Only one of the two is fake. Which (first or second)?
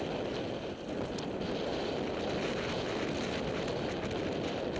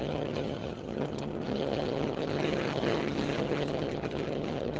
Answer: second